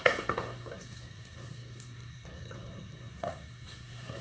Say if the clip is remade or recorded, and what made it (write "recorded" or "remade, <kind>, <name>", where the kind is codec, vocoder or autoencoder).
remade, codec, SNAC